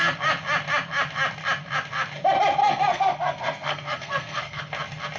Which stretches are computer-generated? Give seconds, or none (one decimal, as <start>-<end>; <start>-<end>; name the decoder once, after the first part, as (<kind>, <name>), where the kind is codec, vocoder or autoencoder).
2.6-4.6 (codec, SNAC)